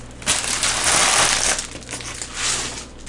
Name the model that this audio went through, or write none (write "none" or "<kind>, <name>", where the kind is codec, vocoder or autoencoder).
none